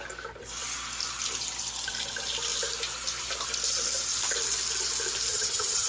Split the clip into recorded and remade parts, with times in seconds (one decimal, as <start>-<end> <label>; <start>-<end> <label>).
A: 0.0-5.3 recorded; 5.3-5.9 remade